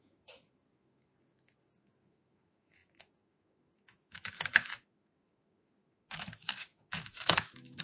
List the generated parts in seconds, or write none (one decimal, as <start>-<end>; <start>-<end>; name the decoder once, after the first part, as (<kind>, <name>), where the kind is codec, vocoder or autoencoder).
0.0-7.8 (autoencoder, DAC-VAE)